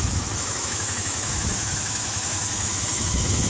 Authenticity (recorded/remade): remade